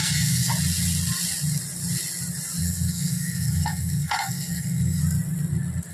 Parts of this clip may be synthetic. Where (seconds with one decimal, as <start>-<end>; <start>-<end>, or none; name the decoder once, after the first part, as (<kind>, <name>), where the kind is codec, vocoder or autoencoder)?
0.0-0.5 (codec, SNAC); 2.6-5.0